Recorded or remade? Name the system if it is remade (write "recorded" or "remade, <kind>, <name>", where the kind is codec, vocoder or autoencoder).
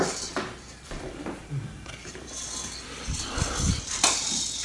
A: remade, vocoder, BigVGAN v2